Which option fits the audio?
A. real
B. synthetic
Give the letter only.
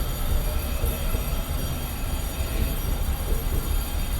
A